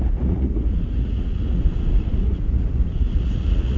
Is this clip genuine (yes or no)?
no